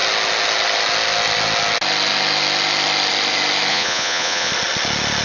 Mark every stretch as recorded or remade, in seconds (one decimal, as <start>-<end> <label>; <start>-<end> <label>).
0.0-3.7 recorded; 3.7-4.5 remade; 4.5-5.2 recorded

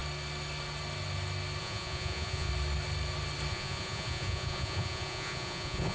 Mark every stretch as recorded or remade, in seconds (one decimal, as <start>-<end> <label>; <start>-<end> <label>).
0.0-1.6 recorded; 1.6-2.5 remade; 2.5-3.5 recorded; 3.5-5.9 remade